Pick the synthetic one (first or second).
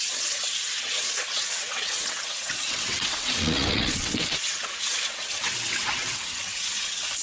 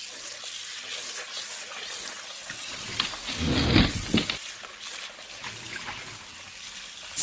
first